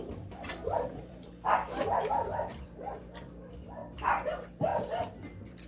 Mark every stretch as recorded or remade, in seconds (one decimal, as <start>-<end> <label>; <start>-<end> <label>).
0.0-4.7 remade; 4.7-5.2 recorded; 5.2-5.7 remade